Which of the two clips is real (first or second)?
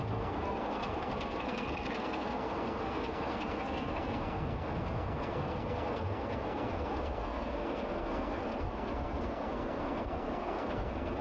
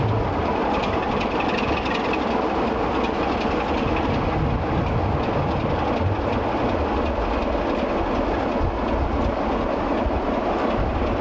second